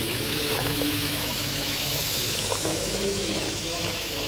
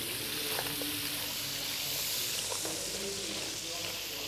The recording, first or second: second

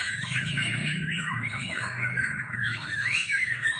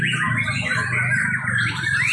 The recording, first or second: second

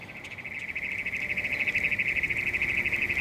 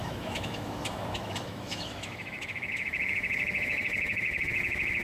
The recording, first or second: first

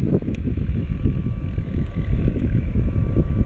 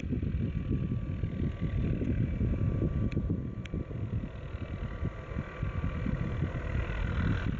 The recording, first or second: second